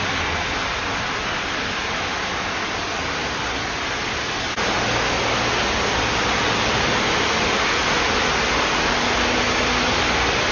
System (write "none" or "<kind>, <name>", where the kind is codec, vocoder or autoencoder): none